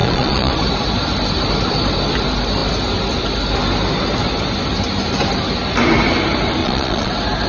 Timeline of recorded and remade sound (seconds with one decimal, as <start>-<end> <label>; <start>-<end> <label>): 0.0-0.5 remade; 0.5-6.6 recorded; 6.6-7.1 remade; 7.1-7.5 recorded